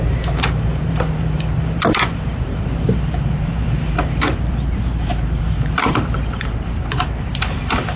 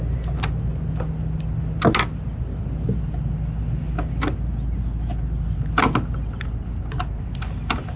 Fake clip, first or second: first